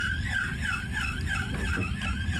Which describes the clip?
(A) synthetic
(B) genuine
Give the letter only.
B